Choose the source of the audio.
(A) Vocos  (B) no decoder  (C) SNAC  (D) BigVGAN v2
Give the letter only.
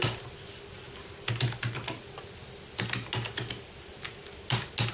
B